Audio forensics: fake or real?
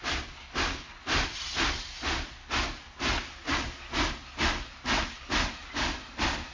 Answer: real